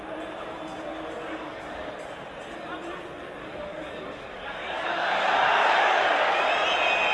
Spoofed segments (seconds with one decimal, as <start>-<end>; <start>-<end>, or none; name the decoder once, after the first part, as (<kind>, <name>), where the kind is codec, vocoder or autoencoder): 1.3-1.9 (codec, DAC); 3.4-6.5